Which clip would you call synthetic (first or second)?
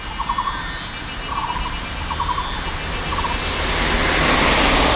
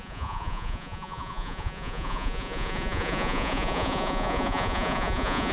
second